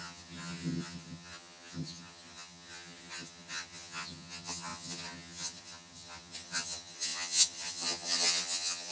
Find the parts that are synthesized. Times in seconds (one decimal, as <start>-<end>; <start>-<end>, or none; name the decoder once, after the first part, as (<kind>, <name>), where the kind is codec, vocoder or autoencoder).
0.0-8.9 (vocoder, HiFi-GAN)